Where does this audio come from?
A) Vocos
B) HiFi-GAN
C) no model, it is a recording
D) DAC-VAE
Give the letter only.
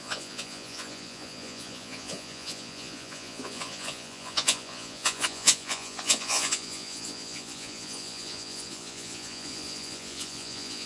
A